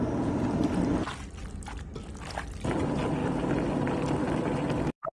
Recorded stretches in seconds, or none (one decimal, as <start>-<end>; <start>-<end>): 3.2-3.7